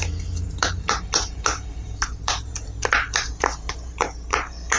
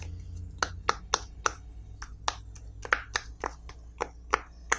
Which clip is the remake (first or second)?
first